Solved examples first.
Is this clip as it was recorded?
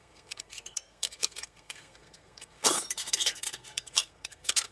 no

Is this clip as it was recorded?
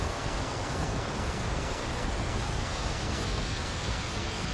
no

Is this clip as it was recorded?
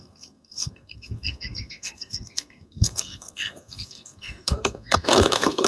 no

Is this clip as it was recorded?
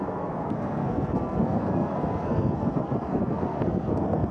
no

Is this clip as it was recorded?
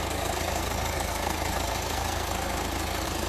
no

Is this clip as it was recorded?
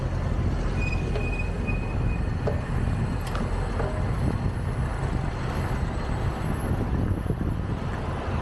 yes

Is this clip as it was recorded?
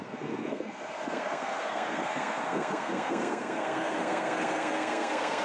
no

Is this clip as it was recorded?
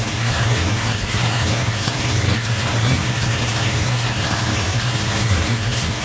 no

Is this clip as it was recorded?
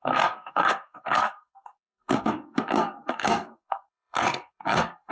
no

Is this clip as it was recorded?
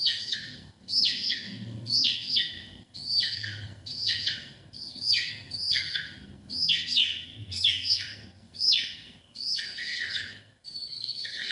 no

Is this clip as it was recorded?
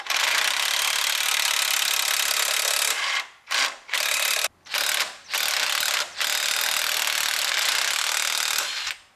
yes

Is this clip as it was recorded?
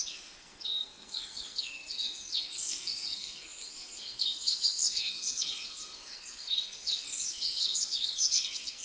no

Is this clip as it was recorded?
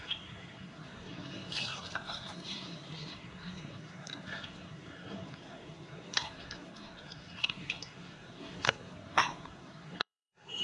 no